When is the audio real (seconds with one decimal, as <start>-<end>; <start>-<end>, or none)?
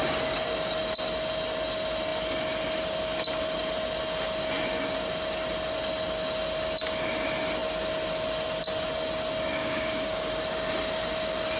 0.0-9.6; 10.3-11.6